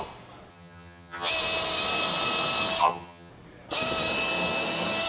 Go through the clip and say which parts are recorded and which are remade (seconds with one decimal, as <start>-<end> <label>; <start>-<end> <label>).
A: 0.0-0.5 recorded; 0.5-1.3 remade; 1.3-2.8 recorded; 2.8-3.3 remade; 3.3-5.1 recorded